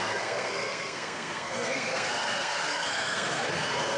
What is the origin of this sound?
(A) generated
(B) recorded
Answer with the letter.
A